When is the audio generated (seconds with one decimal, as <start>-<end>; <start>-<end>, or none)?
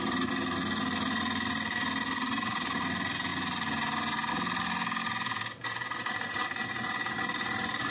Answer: none